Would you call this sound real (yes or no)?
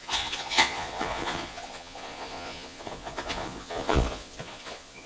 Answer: no